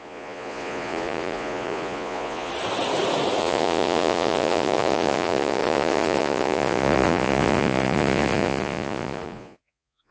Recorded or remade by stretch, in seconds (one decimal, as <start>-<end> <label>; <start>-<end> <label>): 0.0-2.5 remade; 2.5-3.4 recorded; 3.4-10.1 remade